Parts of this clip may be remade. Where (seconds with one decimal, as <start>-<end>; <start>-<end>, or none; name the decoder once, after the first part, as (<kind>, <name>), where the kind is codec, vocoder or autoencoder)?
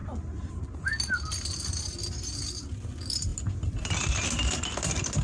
none